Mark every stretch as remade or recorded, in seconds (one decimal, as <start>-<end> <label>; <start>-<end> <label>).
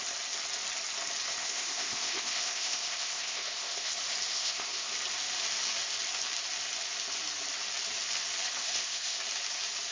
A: 0.0-1.4 recorded; 1.4-3.9 remade; 3.9-4.3 recorded; 4.3-4.9 remade; 4.9-8.6 recorded; 8.6-9.2 remade; 9.2-9.9 recorded